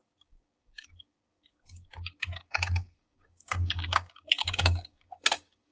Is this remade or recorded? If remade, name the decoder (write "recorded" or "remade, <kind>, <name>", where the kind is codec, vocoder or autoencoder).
remade, codec, DAC